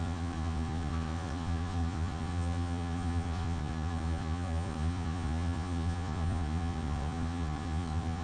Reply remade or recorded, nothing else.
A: remade